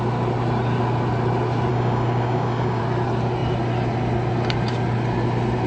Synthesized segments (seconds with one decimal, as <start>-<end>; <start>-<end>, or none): 1.7-2.8